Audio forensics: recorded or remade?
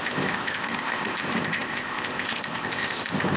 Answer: remade